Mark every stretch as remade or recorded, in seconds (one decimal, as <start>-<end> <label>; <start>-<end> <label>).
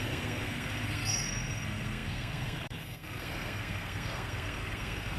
0.0-5.2 remade